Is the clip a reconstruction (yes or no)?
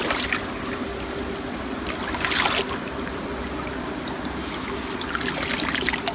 no